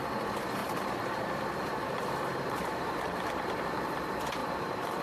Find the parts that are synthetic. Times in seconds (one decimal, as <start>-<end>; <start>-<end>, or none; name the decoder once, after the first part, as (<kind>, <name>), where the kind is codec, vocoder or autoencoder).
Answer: 0.6-3.6 (vocoder, BigVGAN v2); 4.4-5.0